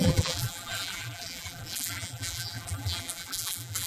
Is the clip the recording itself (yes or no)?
no